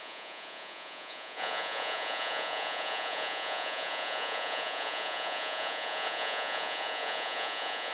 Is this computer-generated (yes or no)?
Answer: yes